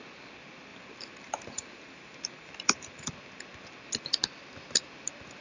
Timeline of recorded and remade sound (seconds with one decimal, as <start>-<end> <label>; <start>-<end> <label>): 0.0-0.7 recorded; 0.7-3.1 remade; 3.1-5.4 recorded